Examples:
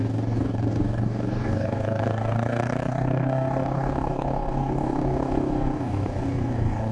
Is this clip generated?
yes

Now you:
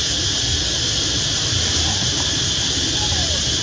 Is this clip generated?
no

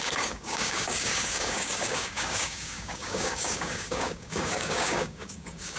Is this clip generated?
yes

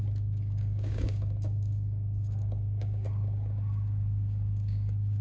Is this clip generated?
yes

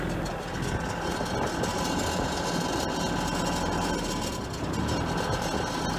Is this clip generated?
no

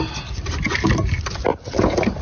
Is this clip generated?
no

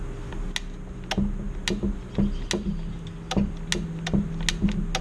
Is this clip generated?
no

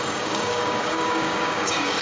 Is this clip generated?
yes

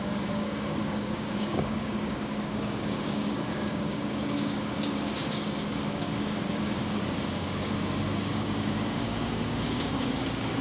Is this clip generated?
yes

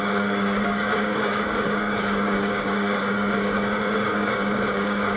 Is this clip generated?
yes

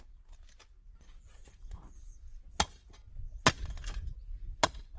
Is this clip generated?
no